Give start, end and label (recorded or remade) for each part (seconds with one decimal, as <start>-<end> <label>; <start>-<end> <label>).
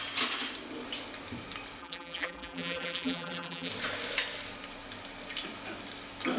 0.0-1.8 recorded; 1.8-3.7 remade; 3.7-6.4 recorded